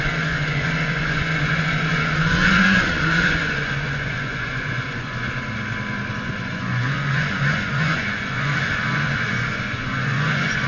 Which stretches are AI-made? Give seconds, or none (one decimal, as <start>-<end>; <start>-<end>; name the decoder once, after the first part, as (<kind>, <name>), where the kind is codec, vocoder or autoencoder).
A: 0.0-5.3 (vocoder, Vocos); 6.1-10.7